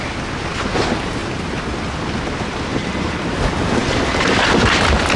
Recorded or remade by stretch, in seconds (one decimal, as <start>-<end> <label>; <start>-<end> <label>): 0.0-2.7 recorded; 2.7-3.2 remade; 3.2-3.8 recorded; 3.8-4.3 remade; 4.3-5.2 recorded